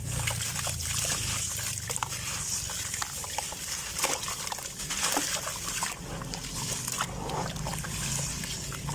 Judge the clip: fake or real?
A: real